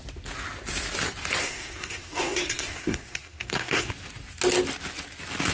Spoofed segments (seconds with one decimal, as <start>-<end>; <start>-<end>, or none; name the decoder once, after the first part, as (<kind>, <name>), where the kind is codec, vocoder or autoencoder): 1.4-3.9 (codec, SNAC)